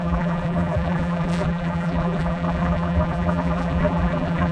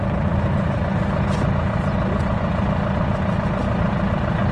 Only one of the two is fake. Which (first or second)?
first